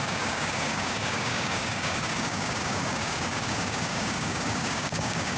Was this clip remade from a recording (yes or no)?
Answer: yes